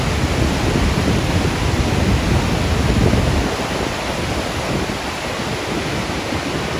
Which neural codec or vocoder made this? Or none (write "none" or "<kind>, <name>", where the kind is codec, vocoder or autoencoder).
none